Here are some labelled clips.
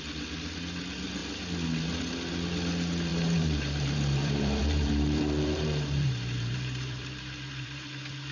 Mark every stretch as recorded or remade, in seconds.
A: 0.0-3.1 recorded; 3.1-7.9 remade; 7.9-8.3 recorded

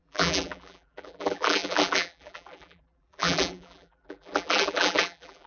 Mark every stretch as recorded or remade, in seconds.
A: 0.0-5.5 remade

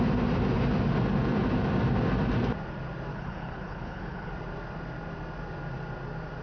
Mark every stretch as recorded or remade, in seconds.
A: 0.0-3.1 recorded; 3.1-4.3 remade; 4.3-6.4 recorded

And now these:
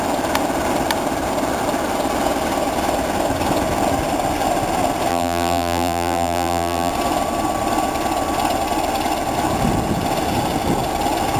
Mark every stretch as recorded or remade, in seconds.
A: 0.0-5.1 recorded; 5.1-6.9 remade; 6.9-11.4 recorded